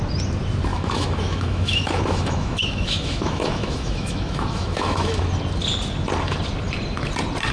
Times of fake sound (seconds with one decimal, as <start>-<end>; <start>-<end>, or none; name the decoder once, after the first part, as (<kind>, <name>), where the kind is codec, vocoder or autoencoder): 0.7-5.2 (autoencoder, DAC-VAE)